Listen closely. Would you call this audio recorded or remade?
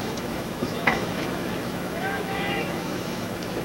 remade